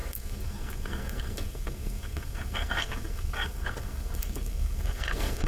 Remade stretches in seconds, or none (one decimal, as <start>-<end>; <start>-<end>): 0.0-5.5